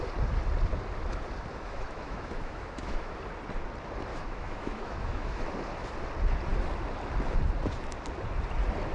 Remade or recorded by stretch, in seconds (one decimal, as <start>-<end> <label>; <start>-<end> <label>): 0.0-1.5 recorded; 1.5-3.2 remade; 3.2-4.1 recorded; 4.1-5.4 remade; 5.4-8.9 recorded